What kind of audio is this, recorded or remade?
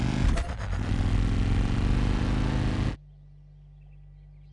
recorded